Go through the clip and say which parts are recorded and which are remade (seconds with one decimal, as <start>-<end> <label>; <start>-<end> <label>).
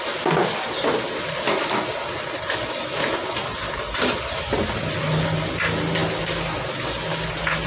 0.0-7.7 recorded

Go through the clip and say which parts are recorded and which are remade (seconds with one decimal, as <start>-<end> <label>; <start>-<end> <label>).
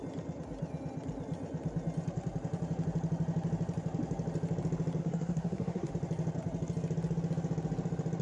0.0-5.0 recorded; 5.0-5.9 remade; 5.9-8.2 recorded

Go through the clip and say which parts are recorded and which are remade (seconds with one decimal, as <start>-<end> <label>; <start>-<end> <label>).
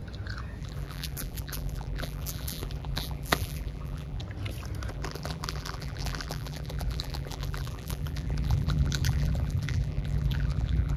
0.0-0.6 recorded; 0.6-4.2 remade; 4.2-4.9 recorded; 4.9-11.0 remade